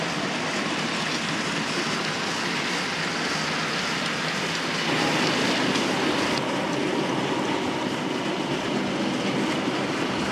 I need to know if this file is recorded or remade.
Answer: recorded